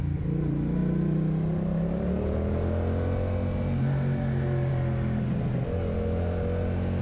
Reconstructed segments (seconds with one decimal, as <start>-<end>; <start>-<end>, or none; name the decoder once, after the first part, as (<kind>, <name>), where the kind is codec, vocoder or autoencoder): none